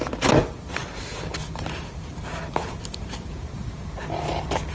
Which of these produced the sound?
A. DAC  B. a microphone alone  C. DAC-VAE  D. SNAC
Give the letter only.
B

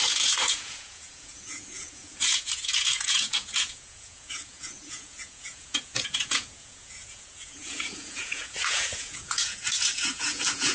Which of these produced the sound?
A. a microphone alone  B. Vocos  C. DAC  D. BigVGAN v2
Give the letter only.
B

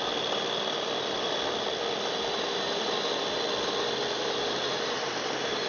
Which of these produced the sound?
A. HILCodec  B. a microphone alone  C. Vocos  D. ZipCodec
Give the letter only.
B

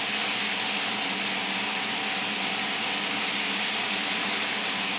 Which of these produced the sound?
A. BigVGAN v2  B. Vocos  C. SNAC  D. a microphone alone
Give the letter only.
D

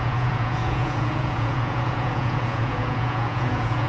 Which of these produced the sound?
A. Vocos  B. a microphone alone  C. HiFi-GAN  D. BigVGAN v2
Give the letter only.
A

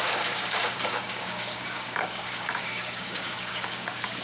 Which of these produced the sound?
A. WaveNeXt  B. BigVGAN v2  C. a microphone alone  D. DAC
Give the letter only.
D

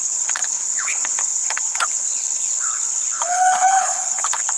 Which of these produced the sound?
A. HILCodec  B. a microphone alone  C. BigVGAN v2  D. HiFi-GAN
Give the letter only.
A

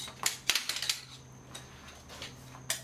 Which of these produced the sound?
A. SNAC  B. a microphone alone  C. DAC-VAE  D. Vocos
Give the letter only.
B